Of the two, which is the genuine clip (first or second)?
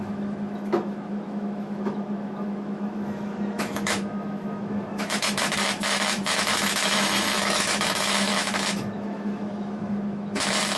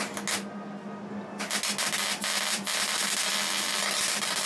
second